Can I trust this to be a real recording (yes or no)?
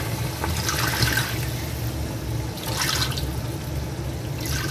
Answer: yes